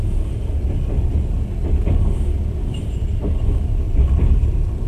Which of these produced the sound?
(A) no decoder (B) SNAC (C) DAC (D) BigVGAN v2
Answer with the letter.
A